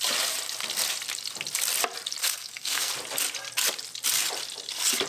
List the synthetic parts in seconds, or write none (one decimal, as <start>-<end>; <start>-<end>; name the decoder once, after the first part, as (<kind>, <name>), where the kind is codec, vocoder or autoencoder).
2.2-2.9 (codec, SNAC)